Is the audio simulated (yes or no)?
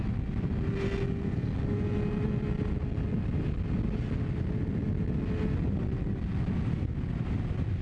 no